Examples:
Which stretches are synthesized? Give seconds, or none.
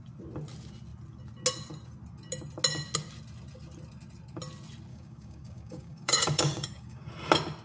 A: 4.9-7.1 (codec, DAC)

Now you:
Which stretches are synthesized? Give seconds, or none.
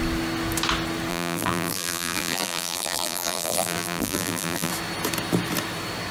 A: 1.1-4.7 (vocoder, BigVGAN v2)